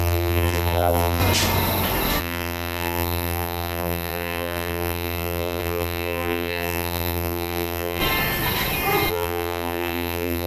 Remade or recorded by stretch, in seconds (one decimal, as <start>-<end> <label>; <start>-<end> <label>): 0.0-1.2 remade; 1.2-2.2 recorded; 2.2-8.0 remade; 8.0-9.1 recorded; 9.1-10.5 remade